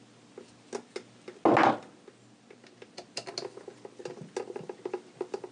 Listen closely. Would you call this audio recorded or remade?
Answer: recorded